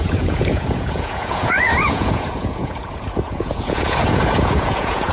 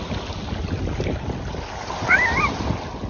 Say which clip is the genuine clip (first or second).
second